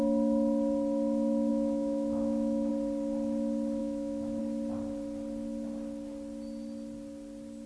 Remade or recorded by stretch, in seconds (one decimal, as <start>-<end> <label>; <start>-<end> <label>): 0.0-1.5 recorded; 1.5-2.7 remade; 2.7-3.8 recorded; 3.8-4.4 remade; 4.4-7.7 recorded